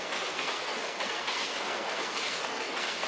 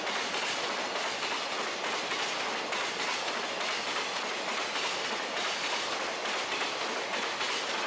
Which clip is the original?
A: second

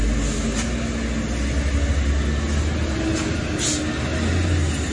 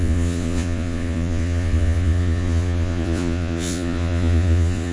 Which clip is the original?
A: first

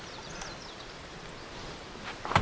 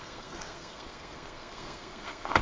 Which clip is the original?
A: first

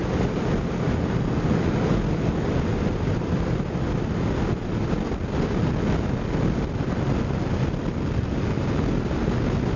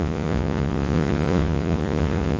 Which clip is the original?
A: first